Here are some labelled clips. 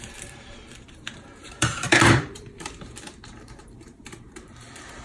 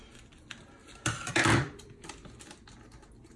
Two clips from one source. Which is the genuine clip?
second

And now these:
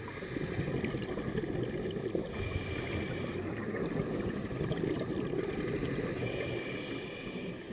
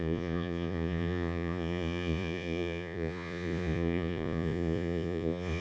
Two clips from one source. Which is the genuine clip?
first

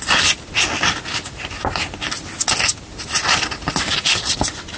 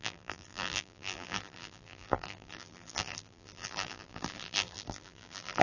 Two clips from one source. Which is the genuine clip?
first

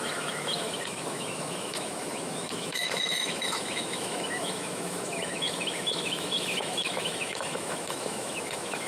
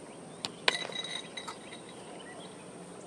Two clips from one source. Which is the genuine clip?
second